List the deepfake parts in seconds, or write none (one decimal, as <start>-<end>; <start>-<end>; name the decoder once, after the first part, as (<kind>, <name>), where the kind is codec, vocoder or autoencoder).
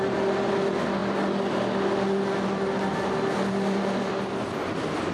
none